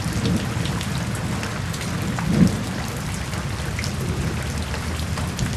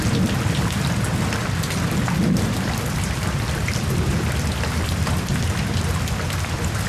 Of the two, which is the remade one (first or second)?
second